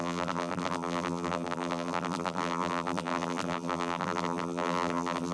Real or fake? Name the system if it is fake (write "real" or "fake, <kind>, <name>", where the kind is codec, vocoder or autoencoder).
fake, vocoder, BigVGAN v2